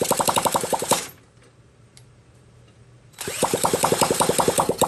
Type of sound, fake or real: fake